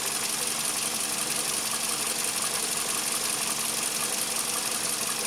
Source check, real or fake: real